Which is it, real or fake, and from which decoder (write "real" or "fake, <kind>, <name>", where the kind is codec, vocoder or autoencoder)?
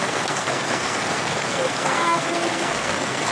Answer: fake, codec, SNAC